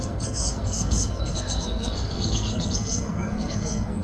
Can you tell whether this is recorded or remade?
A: remade